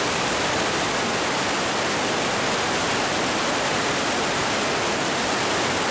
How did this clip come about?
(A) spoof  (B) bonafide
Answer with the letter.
B